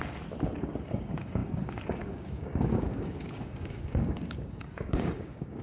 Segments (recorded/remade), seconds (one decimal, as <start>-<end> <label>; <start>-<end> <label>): 0.0-0.6 recorded; 0.6-5.6 remade